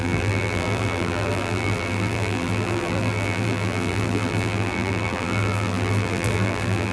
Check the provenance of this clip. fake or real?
fake